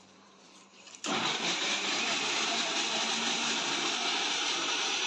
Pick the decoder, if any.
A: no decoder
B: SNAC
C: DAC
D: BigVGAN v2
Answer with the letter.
D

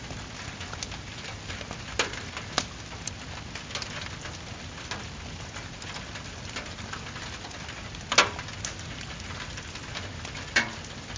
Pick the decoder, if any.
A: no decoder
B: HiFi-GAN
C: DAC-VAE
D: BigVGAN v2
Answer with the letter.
A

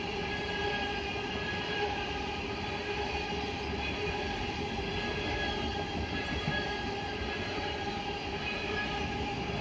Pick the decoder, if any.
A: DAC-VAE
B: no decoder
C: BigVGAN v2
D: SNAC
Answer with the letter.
B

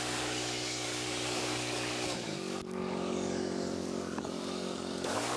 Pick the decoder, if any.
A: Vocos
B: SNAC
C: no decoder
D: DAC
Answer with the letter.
D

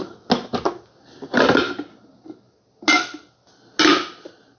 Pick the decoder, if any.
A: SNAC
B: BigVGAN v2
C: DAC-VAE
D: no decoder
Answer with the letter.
D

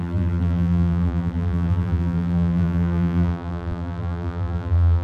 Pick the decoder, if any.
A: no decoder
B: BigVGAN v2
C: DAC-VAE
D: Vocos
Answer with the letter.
B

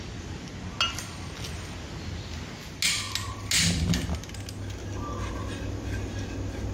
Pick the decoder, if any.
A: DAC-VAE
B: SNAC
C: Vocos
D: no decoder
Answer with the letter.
D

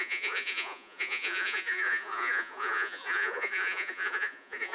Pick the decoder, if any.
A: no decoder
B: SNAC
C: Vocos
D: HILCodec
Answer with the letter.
C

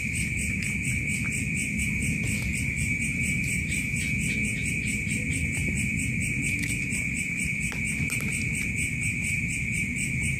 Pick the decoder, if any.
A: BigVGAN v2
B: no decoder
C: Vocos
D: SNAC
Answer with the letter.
B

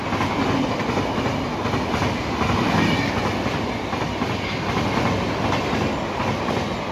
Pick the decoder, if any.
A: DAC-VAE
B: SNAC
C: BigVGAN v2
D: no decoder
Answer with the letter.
D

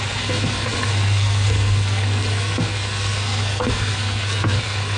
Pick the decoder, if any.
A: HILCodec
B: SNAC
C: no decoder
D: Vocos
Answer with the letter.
B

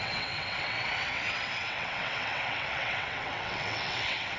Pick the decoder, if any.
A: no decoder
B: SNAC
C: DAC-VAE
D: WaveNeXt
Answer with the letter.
D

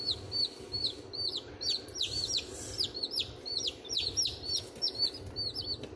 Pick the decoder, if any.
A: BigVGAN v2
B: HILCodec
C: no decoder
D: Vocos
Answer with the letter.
C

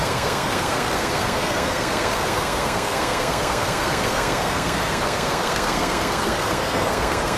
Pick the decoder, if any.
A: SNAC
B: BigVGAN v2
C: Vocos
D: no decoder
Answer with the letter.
A